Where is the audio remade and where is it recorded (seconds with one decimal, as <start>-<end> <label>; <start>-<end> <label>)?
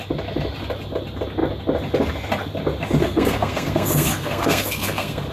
0.0-3.0 recorded; 3.0-5.3 remade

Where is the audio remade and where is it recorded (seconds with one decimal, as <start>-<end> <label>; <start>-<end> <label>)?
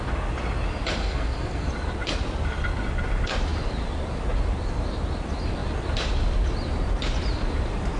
0.0-1.0 recorded; 1.0-1.7 remade; 1.7-8.0 recorded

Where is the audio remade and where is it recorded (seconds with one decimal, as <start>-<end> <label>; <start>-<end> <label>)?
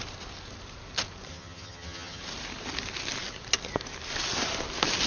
0.0-1.3 recorded; 1.3-2.2 remade; 2.2-5.1 recorded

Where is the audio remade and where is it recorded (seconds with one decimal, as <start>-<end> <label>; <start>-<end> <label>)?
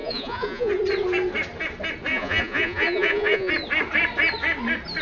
0.0-0.7 remade; 0.7-2.1 recorded; 2.1-3.5 remade; 3.5-5.0 recorded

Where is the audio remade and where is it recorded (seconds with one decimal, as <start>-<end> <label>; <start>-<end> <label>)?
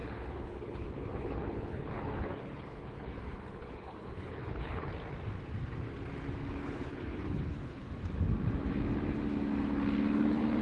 0.0-4.9 remade; 4.9-6.6 recorded; 6.6-7.9 remade; 7.9-10.6 recorded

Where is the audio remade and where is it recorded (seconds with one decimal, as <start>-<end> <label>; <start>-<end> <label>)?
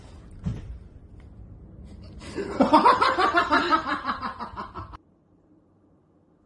0.0-0.5 recorded; 0.5-1.2 remade; 1.2-3.6 recorded; 3.6-6.0 remade; 6.0-6.5 recorded